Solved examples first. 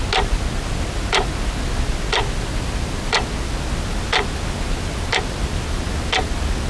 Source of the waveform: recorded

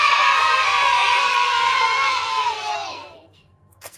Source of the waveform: remade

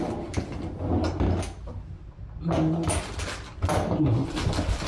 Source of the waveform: recorded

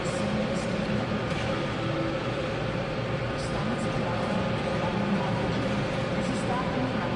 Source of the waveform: recorded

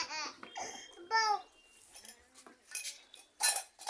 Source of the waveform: recorded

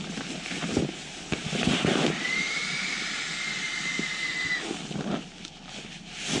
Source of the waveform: recorded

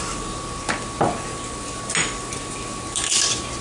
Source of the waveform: recorded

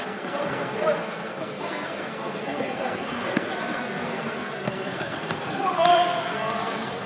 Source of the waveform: remade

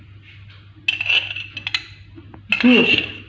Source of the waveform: recorded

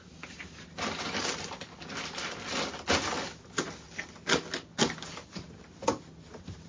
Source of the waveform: recorded